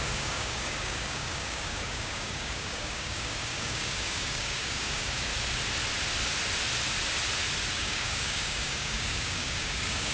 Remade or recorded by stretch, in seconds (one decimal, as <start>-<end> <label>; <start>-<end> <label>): 0.0-5.3 remade; 5.3-7.7 recorded; 7.7-10.1 remade